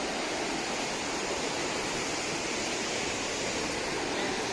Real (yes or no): yes